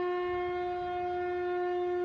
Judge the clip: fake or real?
real